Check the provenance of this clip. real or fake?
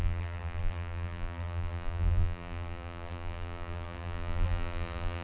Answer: fake